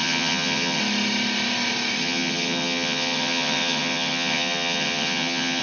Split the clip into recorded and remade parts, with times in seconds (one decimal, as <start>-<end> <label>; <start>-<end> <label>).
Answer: 0.0-0.8 remade; 0.8-2.0 recorded; 2.0-5.6 remade